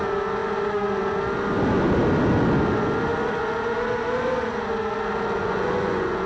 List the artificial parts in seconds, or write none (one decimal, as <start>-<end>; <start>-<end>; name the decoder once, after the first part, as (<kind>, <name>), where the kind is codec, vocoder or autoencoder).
5.4-6.3 (vocoder, Vocos)